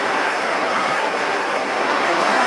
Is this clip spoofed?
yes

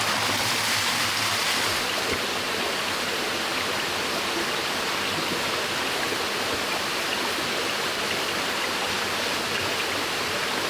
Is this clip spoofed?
no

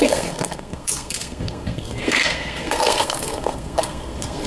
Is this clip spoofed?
yes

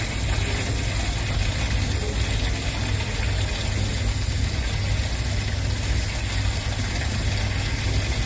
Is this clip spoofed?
no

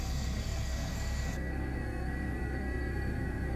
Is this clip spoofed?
yes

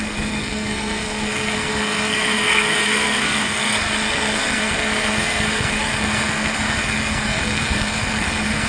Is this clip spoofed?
yes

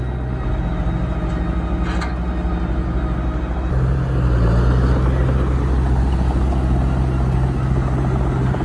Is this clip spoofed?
no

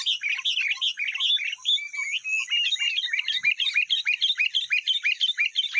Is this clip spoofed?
no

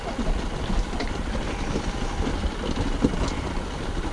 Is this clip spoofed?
no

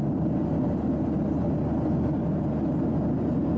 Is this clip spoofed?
no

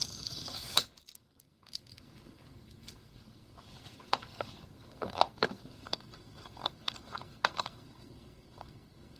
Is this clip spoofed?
yes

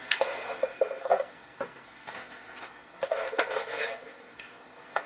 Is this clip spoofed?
yes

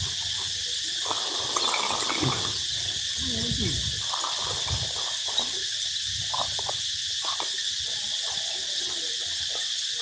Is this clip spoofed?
no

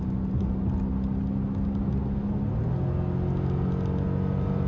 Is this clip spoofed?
no